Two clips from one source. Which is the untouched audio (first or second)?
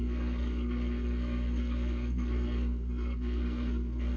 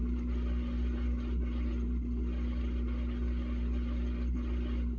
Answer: second